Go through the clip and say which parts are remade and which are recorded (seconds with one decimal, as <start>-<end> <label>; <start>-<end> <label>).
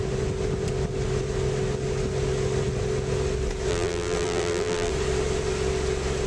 0.0-3.7 recorded; 3.7-4.9 remade; 4.9-6.3 recorded